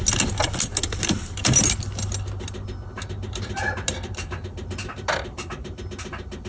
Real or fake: real